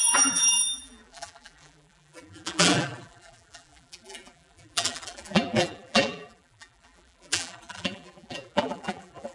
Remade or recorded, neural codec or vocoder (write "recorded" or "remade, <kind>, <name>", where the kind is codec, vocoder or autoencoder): remade, vocoder, BigVGAN v2